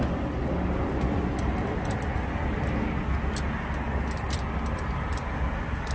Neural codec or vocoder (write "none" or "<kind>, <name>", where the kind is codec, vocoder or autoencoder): none